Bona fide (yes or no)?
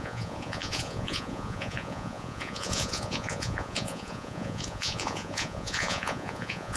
no